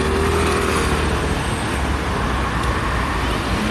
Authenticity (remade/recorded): recorded